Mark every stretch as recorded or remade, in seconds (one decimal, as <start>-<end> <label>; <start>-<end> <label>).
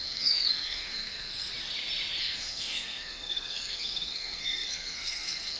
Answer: 0.0-1.5 remade; 1.5-2.2 recorded; 2.2-5.6 remade